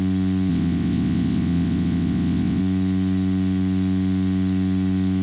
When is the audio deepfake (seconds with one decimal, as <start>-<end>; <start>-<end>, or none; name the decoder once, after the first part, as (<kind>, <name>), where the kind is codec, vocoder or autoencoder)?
0.5-2.6 (vocoder, WaveNeXt)